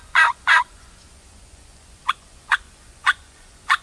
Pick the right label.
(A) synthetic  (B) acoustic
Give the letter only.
A